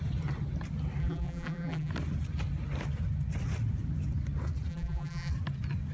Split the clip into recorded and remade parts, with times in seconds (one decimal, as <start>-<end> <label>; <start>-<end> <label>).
0.0-1.0 recorded; 1.0-1.9 remade; 1.9-4.7 recorded; 4.7-5.3 remade; 5.3-5.9 recorded